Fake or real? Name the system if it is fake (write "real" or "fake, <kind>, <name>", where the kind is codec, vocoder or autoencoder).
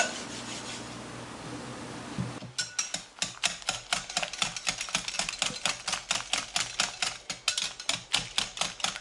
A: real